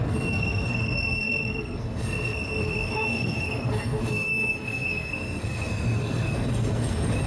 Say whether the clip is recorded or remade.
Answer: remade